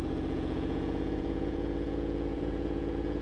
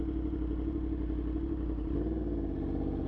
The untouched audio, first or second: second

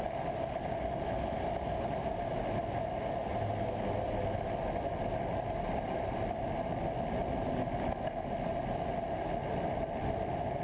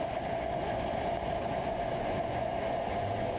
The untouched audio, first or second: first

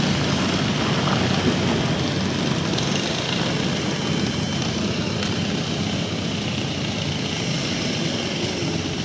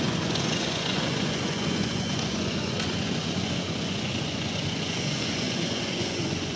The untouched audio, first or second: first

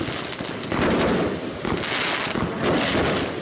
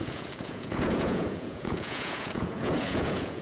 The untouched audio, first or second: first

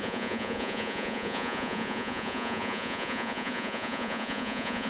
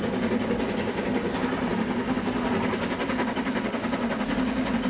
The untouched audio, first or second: second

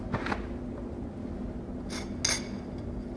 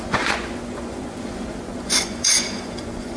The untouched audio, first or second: first